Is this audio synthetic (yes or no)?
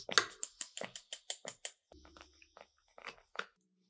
no